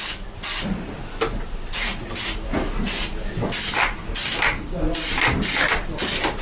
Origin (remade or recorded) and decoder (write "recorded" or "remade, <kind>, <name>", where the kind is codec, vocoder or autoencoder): recorded